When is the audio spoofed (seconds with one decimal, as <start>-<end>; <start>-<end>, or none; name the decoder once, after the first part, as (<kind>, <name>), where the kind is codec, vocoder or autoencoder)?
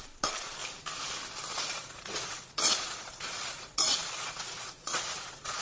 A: 0.0-0.6 (vocoder, Vocos); 1.5-5.6